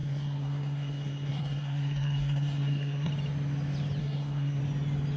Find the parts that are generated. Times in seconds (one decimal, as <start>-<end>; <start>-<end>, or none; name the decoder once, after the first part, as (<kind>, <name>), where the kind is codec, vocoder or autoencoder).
0.0-3.1 (codec, SNAC); 4.0-4.6